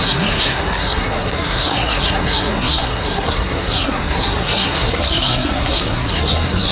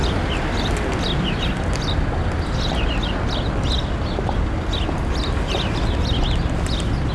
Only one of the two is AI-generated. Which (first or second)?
first